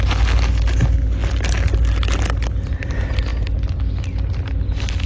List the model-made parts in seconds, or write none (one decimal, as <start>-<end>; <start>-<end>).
none